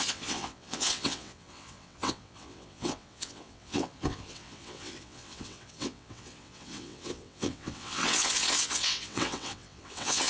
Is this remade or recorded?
remade